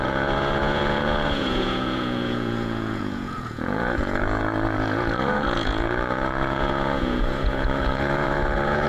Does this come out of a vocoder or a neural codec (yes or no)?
yes